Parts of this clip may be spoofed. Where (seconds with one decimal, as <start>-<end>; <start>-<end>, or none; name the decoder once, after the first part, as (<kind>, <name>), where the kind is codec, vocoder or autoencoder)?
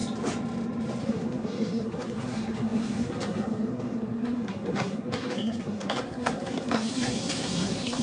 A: 1.0-8.0 (codec, SNAC)